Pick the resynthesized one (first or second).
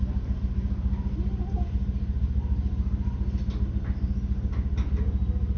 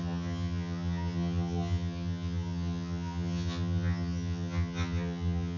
second